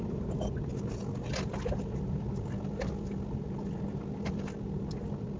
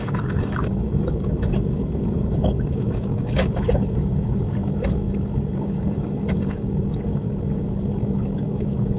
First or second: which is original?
first